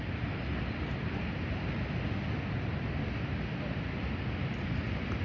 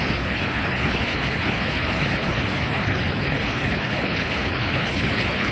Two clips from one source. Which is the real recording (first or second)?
first